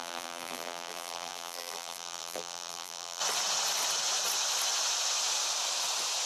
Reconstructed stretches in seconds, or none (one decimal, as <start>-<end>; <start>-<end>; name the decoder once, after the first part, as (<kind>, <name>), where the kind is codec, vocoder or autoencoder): 0.0-3.2 (vocoder, BigVGAN v2)

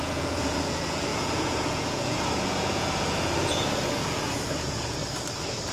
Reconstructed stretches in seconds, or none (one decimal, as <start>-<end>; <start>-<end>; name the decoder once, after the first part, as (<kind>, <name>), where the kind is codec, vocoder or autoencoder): 0.0-5.0 (vocoder, Vocos)